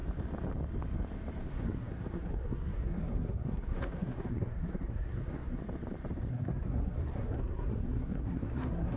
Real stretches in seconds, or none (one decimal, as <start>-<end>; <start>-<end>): 0.0-1.5; 5.6-6.3